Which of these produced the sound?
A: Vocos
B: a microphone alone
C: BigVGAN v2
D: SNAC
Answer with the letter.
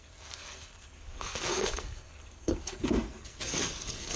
D